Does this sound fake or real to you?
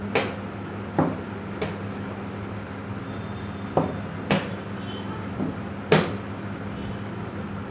real